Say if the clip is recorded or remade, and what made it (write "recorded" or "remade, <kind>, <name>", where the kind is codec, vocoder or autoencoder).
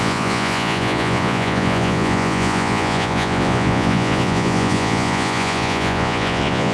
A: remade, vocoder, Vocos